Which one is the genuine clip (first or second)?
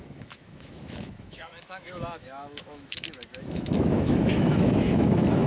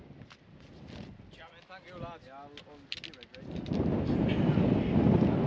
second